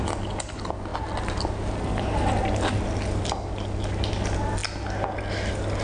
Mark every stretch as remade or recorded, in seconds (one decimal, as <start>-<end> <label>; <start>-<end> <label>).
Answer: 0.0-5.8 recorded